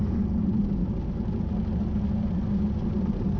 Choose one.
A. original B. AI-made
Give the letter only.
A